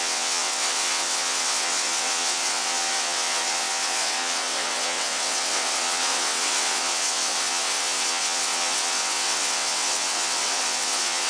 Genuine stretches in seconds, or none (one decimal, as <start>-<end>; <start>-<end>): none